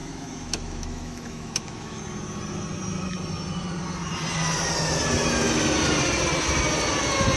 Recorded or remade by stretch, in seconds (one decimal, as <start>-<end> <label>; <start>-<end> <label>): 0.0-2.0 remade; 2.0-7.4 recorded